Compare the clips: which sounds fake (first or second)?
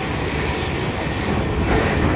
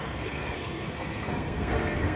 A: second